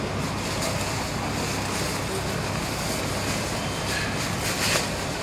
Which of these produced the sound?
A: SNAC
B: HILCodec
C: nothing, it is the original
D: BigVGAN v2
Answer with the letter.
C